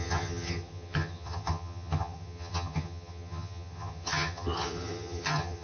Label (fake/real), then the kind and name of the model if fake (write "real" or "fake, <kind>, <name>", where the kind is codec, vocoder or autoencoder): fake, vocoder, HiFi-GAN